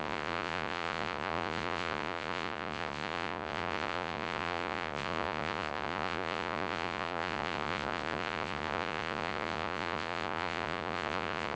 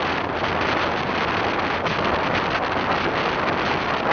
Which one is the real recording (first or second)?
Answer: second